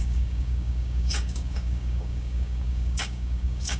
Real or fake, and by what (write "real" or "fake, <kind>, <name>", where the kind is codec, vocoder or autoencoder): fake, codec, DAC